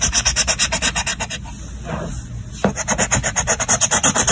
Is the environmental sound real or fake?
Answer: real